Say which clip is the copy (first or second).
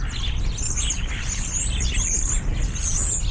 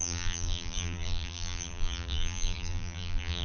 second